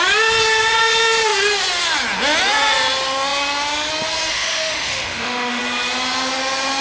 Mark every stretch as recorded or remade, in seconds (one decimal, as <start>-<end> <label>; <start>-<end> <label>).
0.0-4.3 recorded; 4.3-5.6 remade; 5.6-6.8 recorded

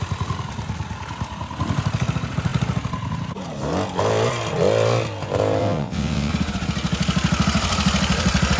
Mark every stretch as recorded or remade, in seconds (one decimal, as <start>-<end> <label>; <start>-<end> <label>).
0.0-5.6 recorded; 5.6-6.3 remade; 6.3-8.6 recorded